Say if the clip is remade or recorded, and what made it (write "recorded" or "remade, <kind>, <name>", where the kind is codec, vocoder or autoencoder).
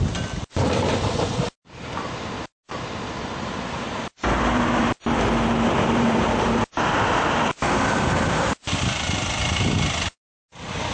remade, vocoder, BigVGAN v2